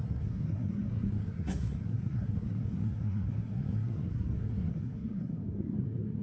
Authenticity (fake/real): fake